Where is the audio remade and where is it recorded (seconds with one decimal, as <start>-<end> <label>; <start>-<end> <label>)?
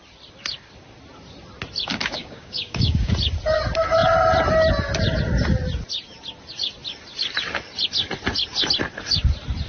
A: 0.0-1.9 recorded; 1.9-3.1 remade; 3.1-9.7 recorded